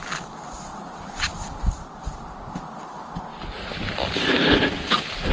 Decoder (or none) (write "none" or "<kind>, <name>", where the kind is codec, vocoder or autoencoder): none